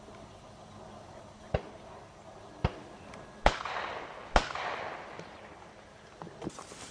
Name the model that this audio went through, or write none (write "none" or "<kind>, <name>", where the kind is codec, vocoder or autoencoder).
none